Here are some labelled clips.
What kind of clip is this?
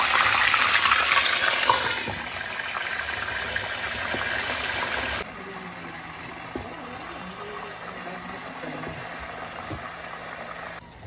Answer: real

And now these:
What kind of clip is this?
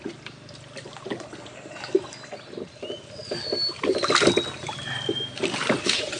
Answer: real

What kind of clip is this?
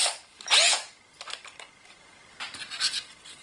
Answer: real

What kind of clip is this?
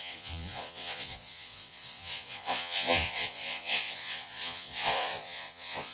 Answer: fake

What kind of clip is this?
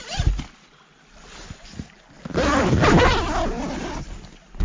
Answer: real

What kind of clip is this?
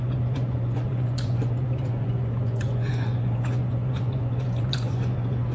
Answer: fake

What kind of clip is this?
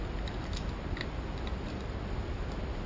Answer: real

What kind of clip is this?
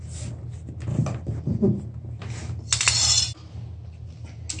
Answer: real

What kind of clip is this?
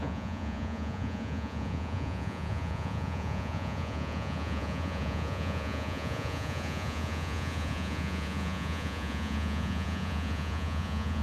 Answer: fake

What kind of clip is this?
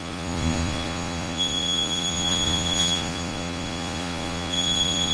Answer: fake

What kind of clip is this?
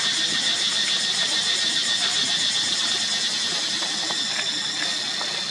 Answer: real